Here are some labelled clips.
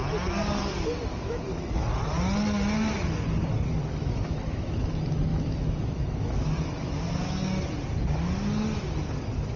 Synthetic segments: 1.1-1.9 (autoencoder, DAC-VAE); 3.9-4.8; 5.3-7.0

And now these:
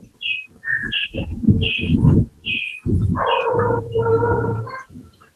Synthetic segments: 0.0-0.8 (vocoder, BigVGAN v2); 1.8-2.7; 3.6-5.4

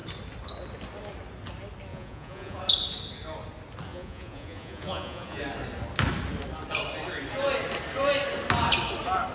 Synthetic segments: 1.9-2.6 (vocoder, Vocos); 3.9-5.4

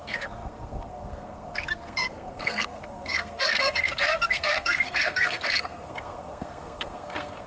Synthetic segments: 0.0-7.5 (codec, SNAC)

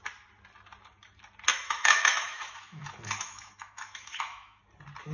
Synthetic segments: 1.5-4.6 (autoencoder, DAC-VAE)

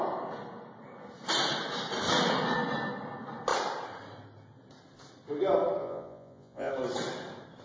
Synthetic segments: 5.8-6.7 (vocoder, Vocos)

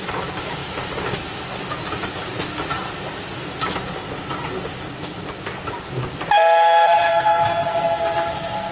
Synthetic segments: 7.1-8.7 (codec, SNAC)